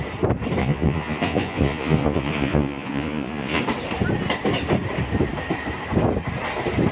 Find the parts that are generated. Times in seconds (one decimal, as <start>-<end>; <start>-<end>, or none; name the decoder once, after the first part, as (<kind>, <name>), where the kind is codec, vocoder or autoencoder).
0.6-3.6 (vocoder, Vocos)